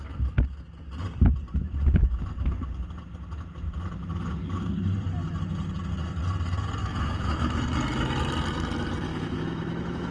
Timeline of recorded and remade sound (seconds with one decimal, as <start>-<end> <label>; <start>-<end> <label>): 0.0-6.8 recorded; 6.8-7.6 remade; 7.6-9.1 recorded; 9.1-10.1 remade